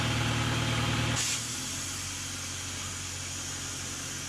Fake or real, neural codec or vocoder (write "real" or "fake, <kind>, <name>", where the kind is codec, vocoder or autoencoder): real